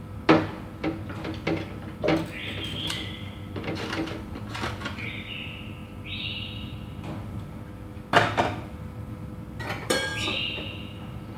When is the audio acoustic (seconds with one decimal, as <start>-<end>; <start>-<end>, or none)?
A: 10.1-10.8